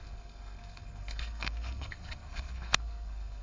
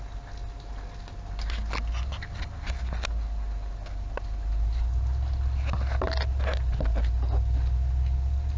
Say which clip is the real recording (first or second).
second